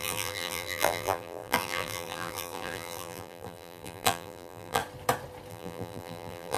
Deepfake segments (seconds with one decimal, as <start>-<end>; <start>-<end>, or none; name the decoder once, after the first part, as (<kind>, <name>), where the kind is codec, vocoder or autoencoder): 0.0-4.8 (vocoder, BigVGAN v2); 5.5-6.6